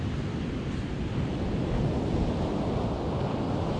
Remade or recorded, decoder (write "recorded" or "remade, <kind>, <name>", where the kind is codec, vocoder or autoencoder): recorded